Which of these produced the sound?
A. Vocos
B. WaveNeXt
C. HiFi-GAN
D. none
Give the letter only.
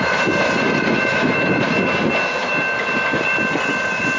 D